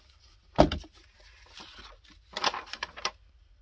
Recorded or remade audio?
recorded